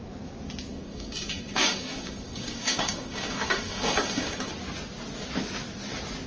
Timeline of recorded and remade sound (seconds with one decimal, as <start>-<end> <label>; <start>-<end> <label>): 0.0-0.7 recorded; 0.7-4.5 remade; 4.5-6.3 recorded